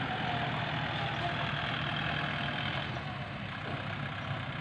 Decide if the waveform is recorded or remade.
recorded